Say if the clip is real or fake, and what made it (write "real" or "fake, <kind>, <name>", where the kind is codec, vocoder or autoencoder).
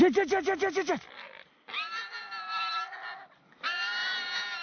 real